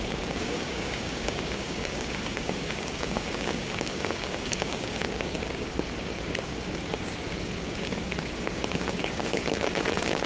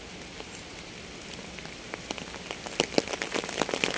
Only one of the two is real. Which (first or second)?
second